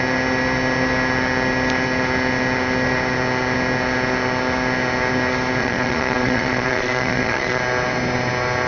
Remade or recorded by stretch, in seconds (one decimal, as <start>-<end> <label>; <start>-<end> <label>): 0.0-5.6 recorded; 5.6-7.6 remade; 7.6-8.7 recorded